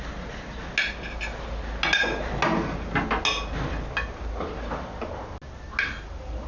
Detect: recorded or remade recorded